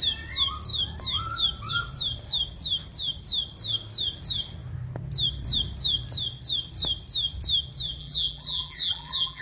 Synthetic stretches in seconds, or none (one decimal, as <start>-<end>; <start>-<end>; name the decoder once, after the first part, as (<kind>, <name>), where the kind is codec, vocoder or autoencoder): 8.0-9.4 (vocoder, BigVGAN v2)